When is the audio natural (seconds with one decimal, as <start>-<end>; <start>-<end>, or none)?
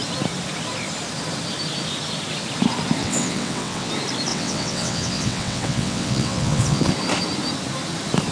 0.0-3.0; 3.9-4.3; 6.9-8.3